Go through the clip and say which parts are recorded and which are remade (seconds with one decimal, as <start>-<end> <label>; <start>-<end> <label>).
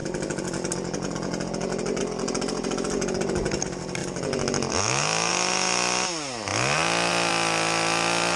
0.0-8.4 recorded